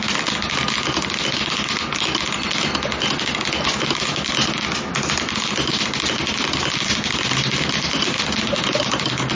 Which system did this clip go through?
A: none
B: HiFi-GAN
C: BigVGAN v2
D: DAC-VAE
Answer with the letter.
A